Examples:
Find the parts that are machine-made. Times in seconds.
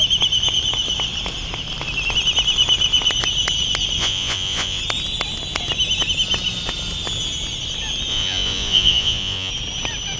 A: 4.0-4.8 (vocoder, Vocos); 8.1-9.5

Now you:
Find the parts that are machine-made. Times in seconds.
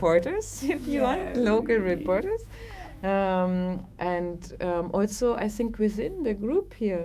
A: 0.0-1.2 (autoencoder, DAC-VAE); 2.2-7.0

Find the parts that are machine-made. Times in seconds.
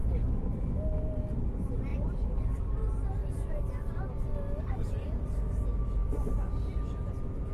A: 1.9-2.6 (vocoder, BigVGAN v2)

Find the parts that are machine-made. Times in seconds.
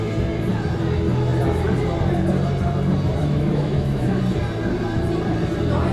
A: 3.2-4.2 (autoencoder, DAC-VAE)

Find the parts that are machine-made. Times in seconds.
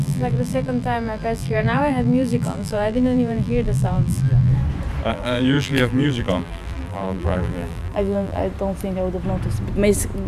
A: 0.0-4.5 (vocoder, BigVGAN v2); 5.1-8.4